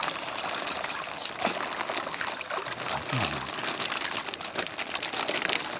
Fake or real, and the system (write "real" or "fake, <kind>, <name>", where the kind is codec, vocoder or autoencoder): real